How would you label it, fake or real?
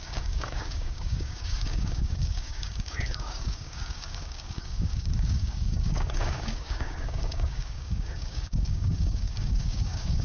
fake